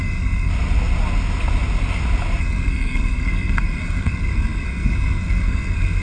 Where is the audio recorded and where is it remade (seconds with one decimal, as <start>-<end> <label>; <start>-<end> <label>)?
0.0-0.5 remade; 0.5-2.4 recorded; 2.4-6.0 remade